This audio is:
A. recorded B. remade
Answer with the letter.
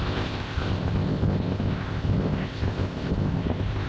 B